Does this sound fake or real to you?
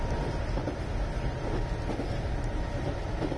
real